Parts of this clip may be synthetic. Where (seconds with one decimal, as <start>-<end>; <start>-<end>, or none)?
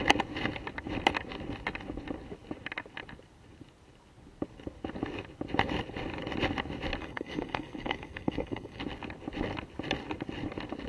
7.0-8.8